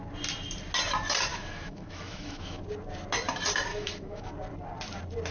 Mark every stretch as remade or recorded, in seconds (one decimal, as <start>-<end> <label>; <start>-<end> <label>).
0.0-1.3 recorded; 1.3-2.6 remade; 2.6-3.7 recorded; 3.7-4.3 remade; 4.3-5.3 recorded